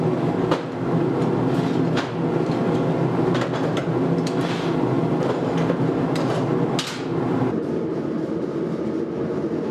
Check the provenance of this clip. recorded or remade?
recorded